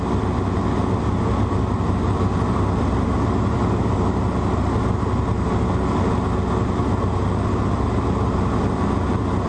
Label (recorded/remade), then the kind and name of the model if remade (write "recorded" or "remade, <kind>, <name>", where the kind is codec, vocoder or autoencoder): recorded